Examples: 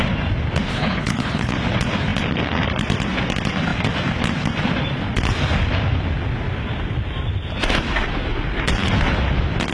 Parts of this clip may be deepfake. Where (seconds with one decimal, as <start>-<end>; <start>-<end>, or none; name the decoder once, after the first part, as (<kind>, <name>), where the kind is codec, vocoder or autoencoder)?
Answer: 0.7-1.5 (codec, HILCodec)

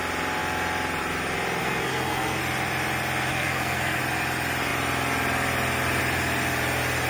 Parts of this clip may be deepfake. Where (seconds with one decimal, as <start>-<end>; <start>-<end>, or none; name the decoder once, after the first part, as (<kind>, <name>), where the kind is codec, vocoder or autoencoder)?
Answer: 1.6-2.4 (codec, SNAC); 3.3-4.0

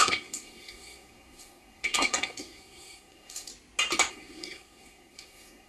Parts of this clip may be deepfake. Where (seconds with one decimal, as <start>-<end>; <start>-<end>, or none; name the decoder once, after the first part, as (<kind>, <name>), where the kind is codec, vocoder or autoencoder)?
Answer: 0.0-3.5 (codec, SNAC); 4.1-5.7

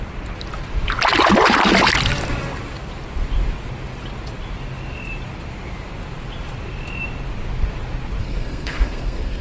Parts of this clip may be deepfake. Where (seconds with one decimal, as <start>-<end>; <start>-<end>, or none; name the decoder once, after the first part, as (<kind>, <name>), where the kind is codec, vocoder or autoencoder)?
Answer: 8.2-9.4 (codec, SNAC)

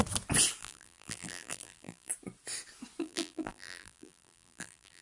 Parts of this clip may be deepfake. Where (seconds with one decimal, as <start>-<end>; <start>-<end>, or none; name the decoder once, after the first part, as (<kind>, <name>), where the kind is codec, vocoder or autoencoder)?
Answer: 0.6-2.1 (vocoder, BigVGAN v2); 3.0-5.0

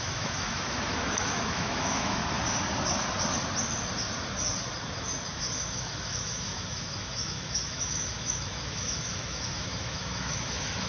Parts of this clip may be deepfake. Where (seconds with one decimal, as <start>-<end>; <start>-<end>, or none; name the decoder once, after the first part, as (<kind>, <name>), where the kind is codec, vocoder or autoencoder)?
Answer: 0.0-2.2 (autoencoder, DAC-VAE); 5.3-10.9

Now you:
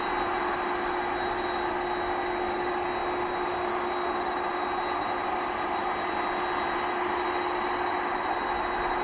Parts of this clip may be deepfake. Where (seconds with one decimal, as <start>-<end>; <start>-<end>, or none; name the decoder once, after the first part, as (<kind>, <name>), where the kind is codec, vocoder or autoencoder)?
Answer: none